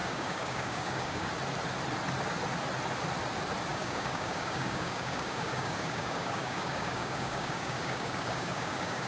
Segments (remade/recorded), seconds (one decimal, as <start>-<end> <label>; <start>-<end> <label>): 0.0-1.3 remade; 1.3-3.7 recorded; 3.7-9.1 remade

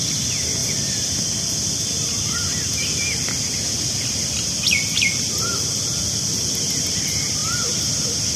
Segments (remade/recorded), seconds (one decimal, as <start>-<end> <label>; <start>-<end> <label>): 0.0-8.4 recorded

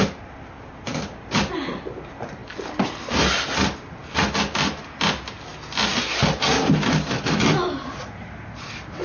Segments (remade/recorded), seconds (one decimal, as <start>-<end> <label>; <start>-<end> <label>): 0.0-9.0 recorded

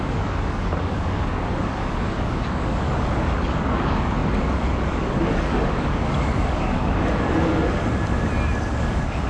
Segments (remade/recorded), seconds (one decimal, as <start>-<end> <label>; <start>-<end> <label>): 0.0-7.6 remade; 7.6-8.7 recorded; 8.7-9.3 remade

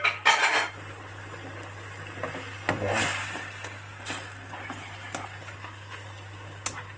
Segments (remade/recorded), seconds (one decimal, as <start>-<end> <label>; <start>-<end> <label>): 0.0-3.2 recorded; 3.2-3.9 remade; 3.9-7.0 recorded